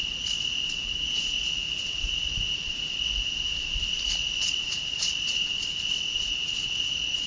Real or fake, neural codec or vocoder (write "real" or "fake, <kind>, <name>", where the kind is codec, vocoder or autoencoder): fake, vocoder, Vocos